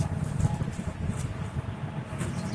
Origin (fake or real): real